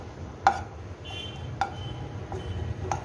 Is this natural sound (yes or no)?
yes